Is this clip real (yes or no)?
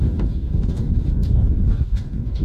no